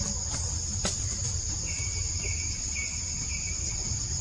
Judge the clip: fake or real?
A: real